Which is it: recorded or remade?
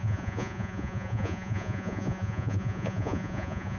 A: remade